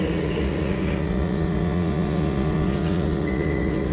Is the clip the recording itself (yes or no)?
no